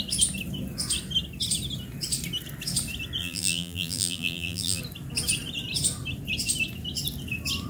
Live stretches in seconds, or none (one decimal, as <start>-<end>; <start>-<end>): 0.0-3.2; 4.8-7.7